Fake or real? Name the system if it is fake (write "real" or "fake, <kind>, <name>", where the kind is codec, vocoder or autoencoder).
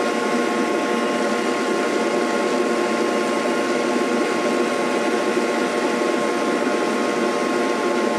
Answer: real